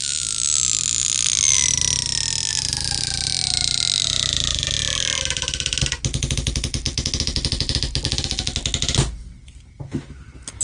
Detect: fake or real real